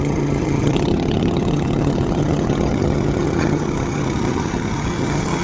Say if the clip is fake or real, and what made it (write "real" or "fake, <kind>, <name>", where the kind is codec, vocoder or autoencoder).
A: fake, vocoder, HiFi-GAN